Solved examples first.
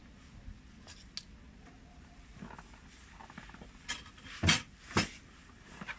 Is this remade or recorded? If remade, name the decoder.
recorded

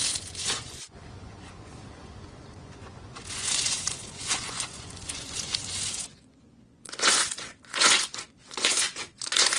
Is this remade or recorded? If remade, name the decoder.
remade, vocoder, Vocos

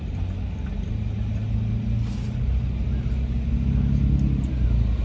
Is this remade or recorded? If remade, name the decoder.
recorded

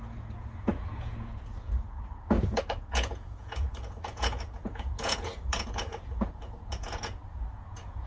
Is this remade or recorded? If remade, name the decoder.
remade, vocoder, Vocos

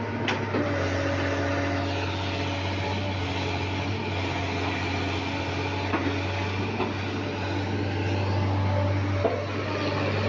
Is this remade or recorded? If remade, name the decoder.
recorded